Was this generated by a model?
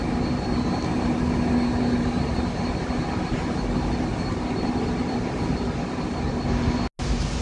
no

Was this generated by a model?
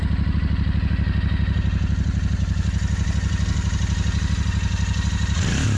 no